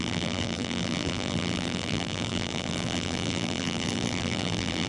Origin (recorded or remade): remade